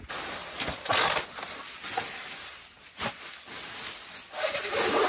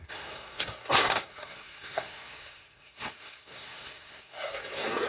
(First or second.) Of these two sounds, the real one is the first